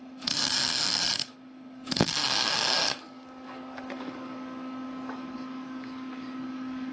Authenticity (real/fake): fake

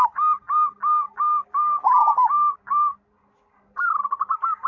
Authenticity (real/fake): real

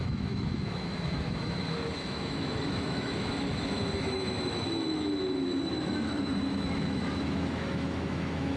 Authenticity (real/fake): fake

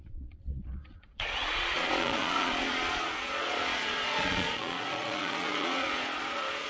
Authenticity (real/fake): fake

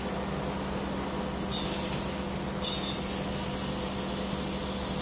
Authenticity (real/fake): real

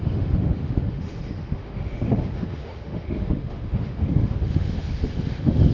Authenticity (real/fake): fake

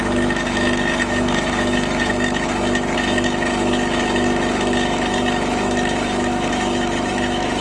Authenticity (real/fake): fake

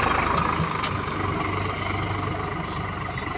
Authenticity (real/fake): real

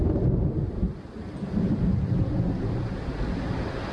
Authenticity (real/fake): real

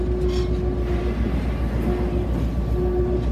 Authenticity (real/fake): real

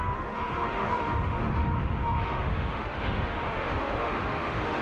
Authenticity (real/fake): fake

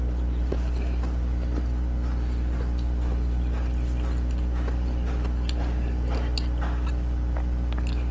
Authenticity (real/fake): real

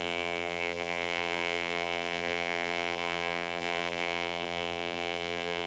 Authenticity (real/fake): fake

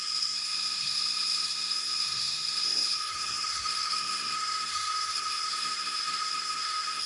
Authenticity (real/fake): fake